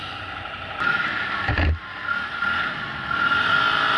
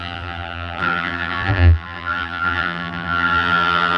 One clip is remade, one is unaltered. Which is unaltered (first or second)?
first